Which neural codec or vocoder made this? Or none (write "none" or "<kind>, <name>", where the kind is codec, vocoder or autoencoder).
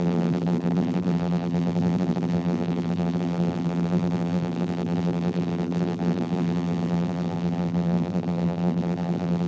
vocoder, BigVGAN v2